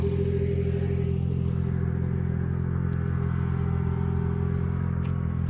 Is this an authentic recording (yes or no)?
yes